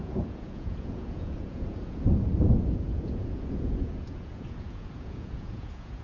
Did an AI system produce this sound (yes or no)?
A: yes